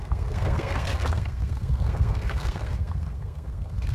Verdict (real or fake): fake